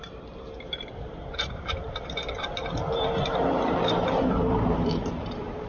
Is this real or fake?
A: fake